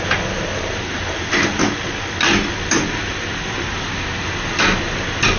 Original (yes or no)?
yes